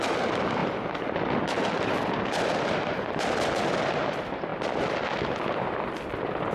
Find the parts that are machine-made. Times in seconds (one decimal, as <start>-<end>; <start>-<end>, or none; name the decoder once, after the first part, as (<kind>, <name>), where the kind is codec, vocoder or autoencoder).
none